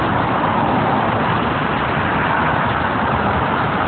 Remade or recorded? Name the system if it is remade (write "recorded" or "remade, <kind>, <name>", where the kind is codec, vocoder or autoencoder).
recorded